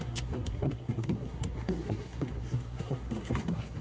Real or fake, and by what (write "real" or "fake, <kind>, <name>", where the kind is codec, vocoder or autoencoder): fake, codec, SNAC